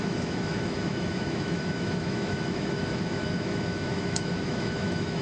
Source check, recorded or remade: remade